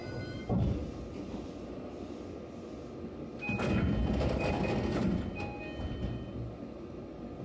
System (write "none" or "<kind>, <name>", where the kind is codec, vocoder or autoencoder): none